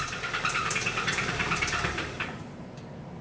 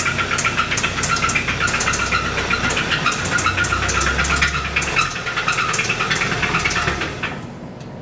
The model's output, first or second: first